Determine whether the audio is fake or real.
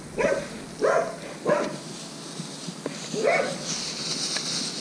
real